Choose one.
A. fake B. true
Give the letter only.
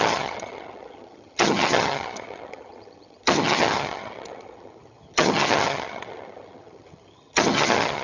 A